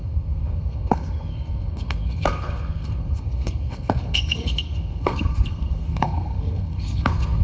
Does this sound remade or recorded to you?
remade